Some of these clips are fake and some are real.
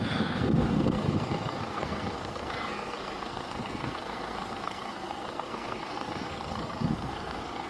fake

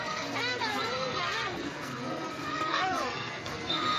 fake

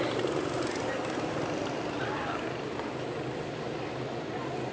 real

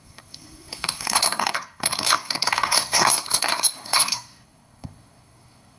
fake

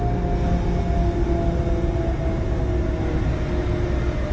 real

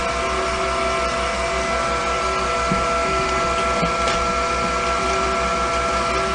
real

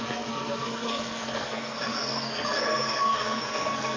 fake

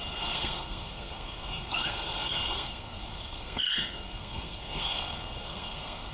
fake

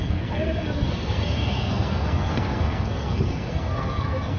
fake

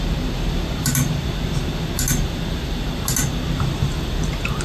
real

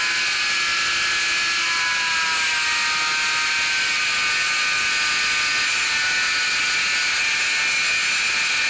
real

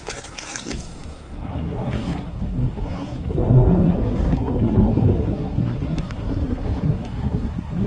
fake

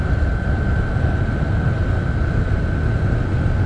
real